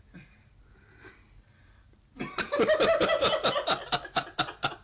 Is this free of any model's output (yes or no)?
yes